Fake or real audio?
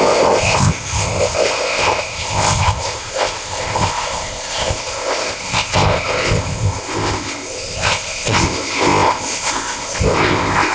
fake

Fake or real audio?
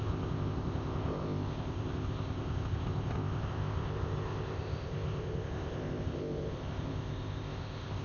fake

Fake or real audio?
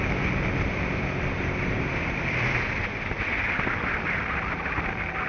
real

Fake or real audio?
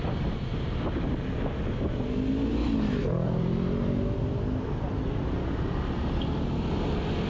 real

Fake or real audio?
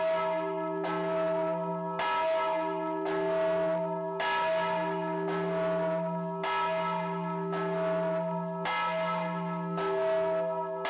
real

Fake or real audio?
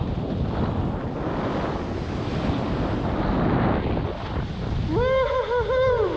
real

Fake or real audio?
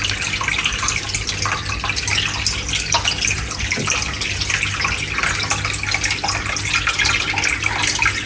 real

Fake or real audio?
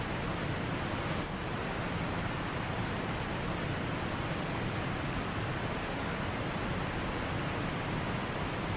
real